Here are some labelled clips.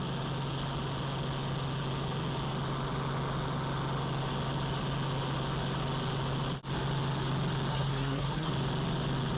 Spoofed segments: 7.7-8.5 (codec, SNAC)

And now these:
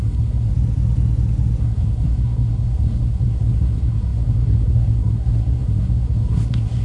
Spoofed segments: 0.0-0.5 (codec, SNAC); 1.6-6.8